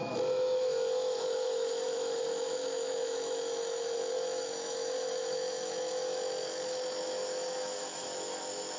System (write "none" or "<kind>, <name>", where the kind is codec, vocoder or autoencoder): autoencoder, DAC-VAE